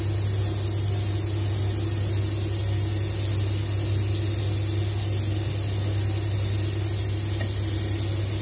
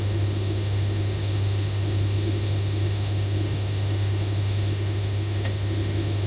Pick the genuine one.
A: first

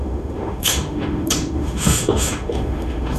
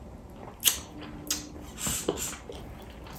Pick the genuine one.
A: second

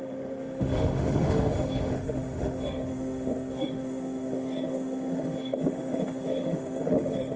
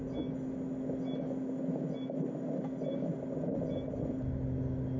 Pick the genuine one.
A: second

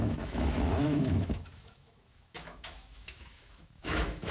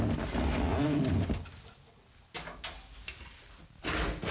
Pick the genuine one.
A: second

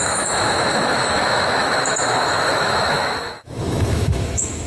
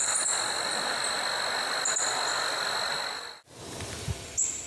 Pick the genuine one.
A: second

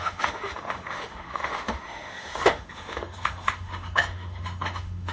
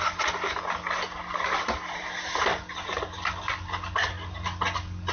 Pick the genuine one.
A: second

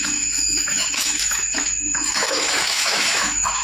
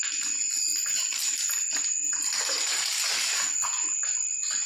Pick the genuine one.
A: second